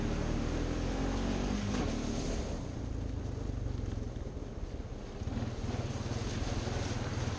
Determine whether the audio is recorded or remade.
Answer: recorded